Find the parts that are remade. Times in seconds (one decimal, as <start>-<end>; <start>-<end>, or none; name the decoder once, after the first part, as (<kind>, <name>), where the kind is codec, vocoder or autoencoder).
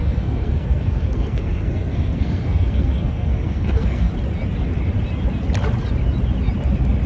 0.0-4.1 (codec, SNAC)